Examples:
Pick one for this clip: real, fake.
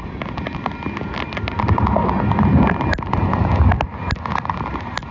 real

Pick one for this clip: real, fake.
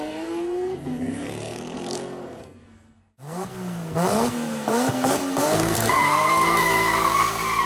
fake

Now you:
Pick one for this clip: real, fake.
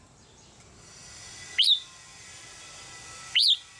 real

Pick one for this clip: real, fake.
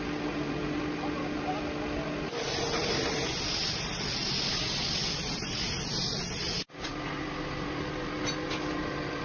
real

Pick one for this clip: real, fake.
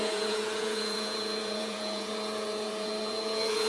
fake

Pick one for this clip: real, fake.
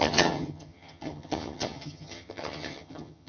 fake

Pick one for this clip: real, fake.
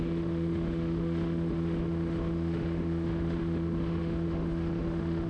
fake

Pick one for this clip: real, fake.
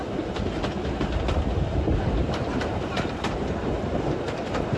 real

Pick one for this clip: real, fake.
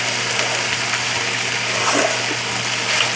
real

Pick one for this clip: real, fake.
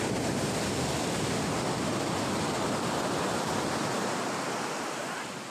real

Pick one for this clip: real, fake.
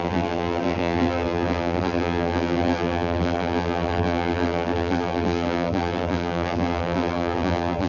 fake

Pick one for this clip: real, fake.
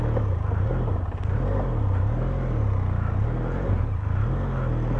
real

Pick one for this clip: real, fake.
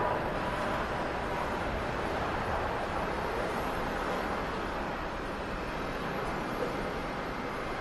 real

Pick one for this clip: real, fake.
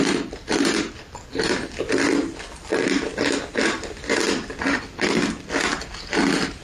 fake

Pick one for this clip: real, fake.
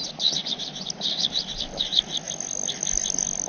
real